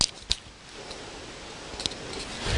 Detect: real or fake real